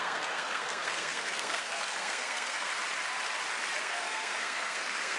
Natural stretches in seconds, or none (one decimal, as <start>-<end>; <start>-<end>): 2.7-3.8